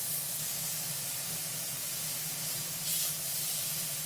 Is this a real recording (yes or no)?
yes